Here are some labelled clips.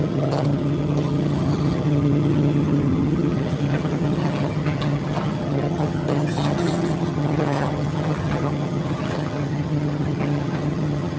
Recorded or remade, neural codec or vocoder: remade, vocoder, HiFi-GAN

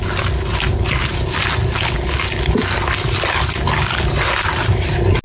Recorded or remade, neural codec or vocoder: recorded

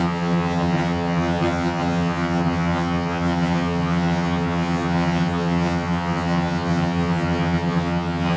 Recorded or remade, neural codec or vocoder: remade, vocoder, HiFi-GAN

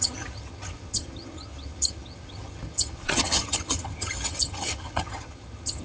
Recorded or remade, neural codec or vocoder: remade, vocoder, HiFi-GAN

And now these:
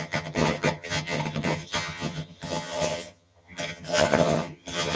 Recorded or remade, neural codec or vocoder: remade, vocoder, HiFi-GAN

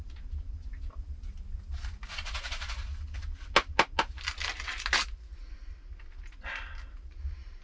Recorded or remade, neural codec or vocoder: recorded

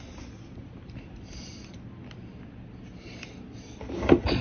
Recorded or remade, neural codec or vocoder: recorded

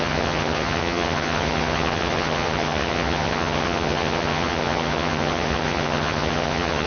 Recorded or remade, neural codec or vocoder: remade, vocoder, HiFi-GAN